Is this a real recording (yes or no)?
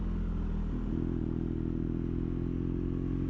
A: yes